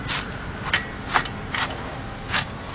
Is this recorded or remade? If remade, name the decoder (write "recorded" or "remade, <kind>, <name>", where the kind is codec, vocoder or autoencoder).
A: recorded